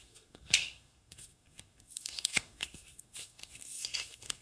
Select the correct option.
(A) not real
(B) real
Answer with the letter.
A